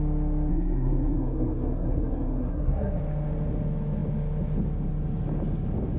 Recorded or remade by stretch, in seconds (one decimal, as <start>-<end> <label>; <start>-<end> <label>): 0.0-0.5 recorded; 0.5-3.0 remade; 3.0-6.0 recorded